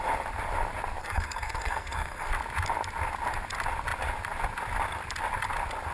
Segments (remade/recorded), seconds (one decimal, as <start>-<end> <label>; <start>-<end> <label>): 0.0-1.0 recorded; 1.0-2.3 remade; 2.3-5.9 recorded

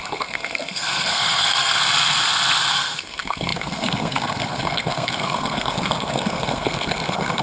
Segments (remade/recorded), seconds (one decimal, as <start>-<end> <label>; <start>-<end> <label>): 0.0-1.8 remade; 1.8-2.7 recorded; 2.7-7.4 remade

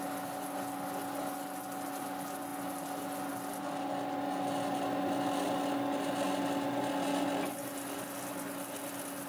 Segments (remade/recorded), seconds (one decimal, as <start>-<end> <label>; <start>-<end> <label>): 0.0-9.3 recorded

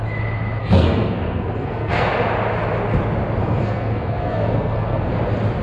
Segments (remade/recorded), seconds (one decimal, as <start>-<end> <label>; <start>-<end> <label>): 0.0-0.6 recorded; 0.6-2.1 remade; 2.1-3.4 recorded; 3.4-5.1 remade; 5.1-5.6 recorded

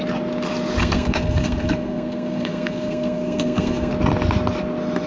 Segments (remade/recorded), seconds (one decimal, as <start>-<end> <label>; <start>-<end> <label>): 0.0-0.8 recorded; 0.8-3.9 remade; 3.9-5.1 recorded

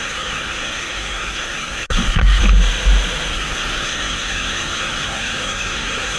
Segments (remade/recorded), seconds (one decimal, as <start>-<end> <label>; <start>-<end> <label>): 0.0-2.4 remade; 2.4-3.3 recorded; 3.3-6.2 remade

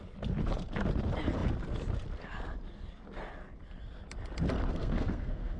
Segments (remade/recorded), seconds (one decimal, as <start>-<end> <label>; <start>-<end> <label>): 0.0-4.7 recorded; 4.7-5.6 remade